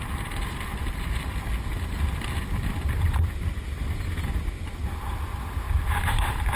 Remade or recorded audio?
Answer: remade